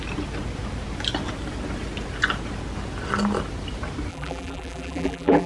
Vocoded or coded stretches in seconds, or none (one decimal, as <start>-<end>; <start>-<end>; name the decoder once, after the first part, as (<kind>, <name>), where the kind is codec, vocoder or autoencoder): 4.1-5.5 (vocoder, BigVGAN v2)